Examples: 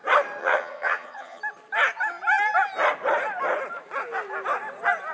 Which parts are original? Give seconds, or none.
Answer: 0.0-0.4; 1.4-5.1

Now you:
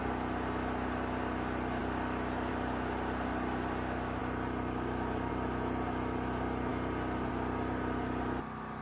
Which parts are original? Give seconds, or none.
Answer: 0.0-8.8

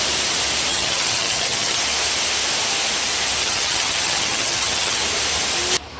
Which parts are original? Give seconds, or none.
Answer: 0.0-0.7; 1.8-3.4; 5.0-6.0

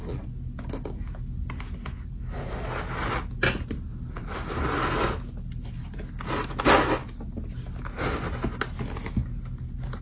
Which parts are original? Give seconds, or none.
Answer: 0.0-10.0

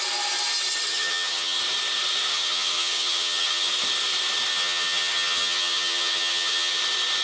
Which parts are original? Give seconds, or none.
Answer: 0.0-0.9; 1.6-2.3; 3.7-4.5; 6.8-7.2

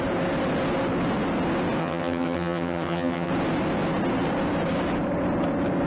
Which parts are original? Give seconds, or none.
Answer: 0.0-1.8; 3.3-5.9

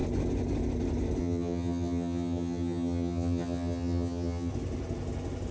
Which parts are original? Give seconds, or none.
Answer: 0.0-1.2; 4.5-5.5